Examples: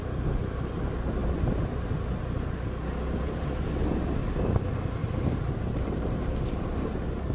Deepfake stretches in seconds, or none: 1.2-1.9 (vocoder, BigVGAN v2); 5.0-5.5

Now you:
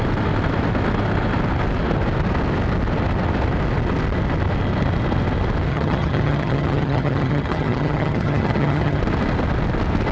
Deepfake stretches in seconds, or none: 5.7-9.0 (vocoder, HiFi-GAN)

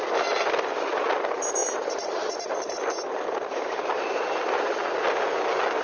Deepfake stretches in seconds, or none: 1.6-2.8 (vocoder, BigVGAN v2); 3.5-4.7

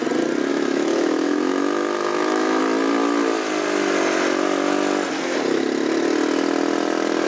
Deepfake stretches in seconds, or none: 0.5-2.6 (autoencoder, DAC-VAE)

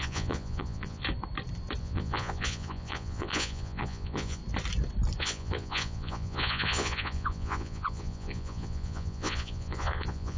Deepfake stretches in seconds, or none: 0.0-1.0 (vocoder, Vocos); 1.8-4.4; 5.2-10.4